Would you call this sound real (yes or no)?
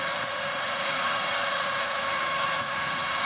no